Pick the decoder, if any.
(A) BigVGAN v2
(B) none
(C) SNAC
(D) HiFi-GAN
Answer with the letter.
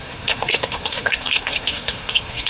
C